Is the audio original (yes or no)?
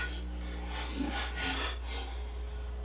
yes